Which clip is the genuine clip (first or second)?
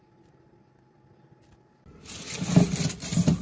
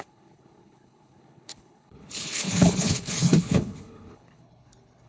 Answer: first